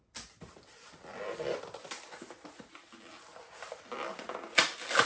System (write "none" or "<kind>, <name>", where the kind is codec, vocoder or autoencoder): none